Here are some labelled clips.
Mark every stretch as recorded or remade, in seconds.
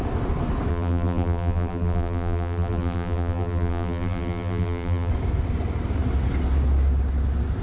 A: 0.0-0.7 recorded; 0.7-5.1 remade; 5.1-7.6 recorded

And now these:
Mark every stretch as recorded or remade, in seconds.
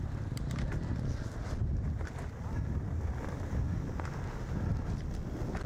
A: 0.0-5.7 recorded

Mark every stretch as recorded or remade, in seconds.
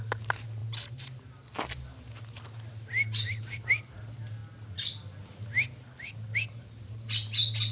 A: 0.0-7.7 recorded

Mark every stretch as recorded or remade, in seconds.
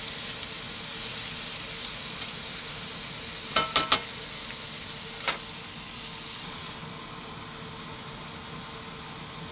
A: 0.0-9.5 recorded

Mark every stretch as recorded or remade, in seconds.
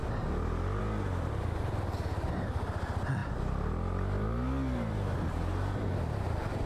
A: 0.0-6.7 recorded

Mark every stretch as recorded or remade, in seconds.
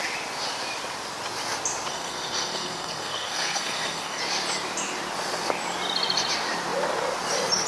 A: 0.0-1.9 recorded; 1.9-4.2 remade; 4.2-7.7 recorded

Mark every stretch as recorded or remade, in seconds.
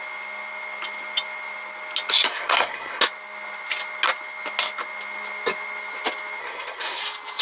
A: 0.0-2.3 recorded; 2.3-3.0 remade; 3.0-6.4 recorded; 6.4-7.0 remade; 7.0-7.4 recorded